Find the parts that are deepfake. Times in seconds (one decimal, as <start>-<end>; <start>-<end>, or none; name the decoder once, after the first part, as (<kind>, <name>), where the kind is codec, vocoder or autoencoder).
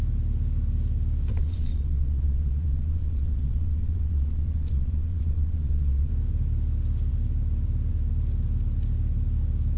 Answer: 1.3-6.1 (vocoder, Vocos)